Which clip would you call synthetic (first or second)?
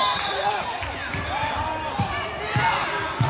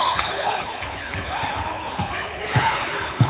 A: second